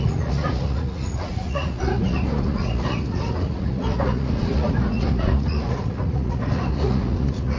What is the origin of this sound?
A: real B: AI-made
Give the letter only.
B